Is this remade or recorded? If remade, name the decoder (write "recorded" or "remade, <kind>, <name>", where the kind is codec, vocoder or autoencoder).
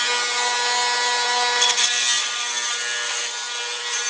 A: recorded